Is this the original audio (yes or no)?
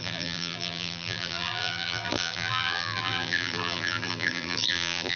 no